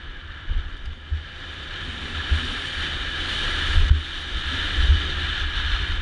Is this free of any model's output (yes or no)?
yes